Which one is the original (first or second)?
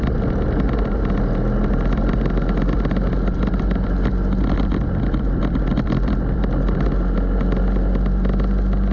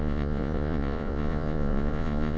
first